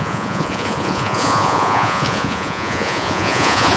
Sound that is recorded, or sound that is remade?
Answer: remade